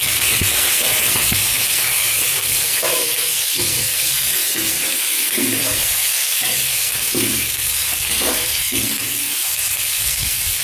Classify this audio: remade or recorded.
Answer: remade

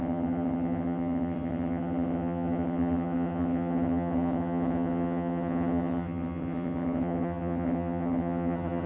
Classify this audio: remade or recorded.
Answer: remade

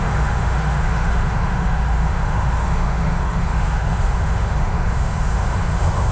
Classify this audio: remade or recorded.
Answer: remade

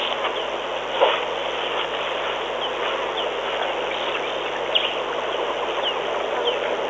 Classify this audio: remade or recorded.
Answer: recorded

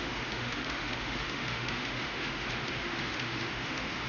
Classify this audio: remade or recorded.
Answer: remade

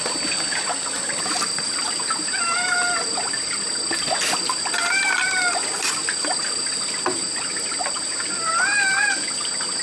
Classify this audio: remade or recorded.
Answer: recorded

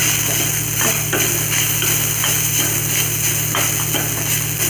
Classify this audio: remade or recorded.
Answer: recorded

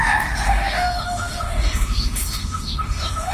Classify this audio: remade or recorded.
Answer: remade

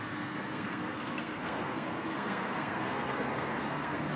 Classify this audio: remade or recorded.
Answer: remade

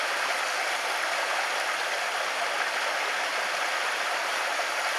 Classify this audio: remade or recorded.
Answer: recorded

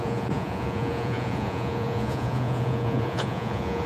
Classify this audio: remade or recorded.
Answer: remade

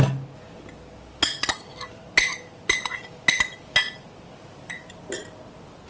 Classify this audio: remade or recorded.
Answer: recorded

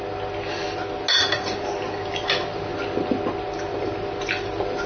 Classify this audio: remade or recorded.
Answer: recorded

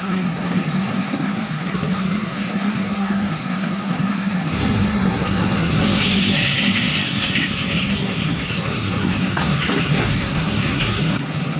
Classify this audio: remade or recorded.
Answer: remade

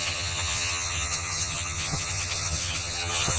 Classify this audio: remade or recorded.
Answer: remade